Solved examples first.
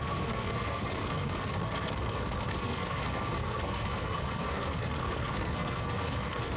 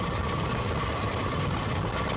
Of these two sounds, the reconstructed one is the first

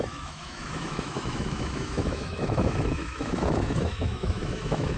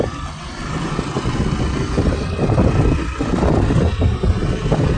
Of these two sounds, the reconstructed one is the first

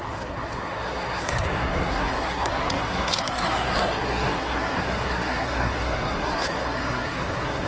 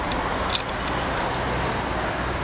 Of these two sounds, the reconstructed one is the first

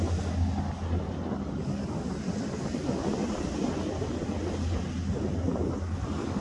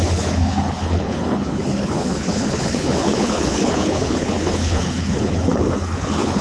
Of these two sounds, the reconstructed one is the second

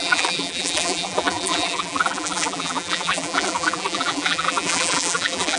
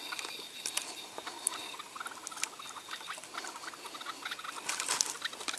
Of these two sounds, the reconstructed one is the first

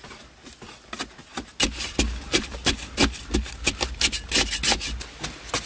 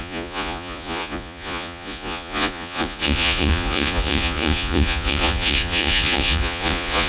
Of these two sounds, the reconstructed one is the second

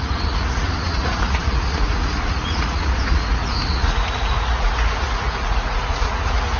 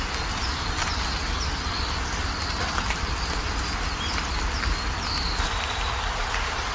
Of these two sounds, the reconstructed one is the first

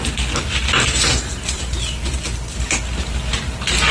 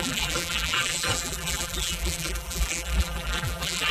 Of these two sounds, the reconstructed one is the second